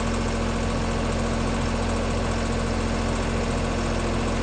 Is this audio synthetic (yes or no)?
no